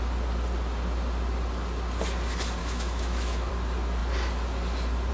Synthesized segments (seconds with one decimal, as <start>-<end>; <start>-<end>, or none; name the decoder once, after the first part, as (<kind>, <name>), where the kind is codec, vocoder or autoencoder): 2.6-3.5 (autoencoder, DAC-VAE)